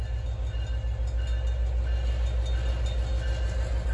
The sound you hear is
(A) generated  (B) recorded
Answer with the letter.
B